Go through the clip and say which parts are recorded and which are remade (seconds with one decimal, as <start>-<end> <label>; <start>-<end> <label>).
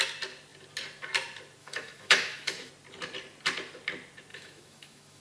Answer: 0.0-1.6 recorded; 1.6-2.7 remade; 2.7-4.3 recorded; 4.3-5.2 remade